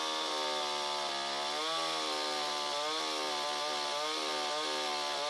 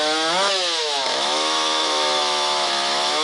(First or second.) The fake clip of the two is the second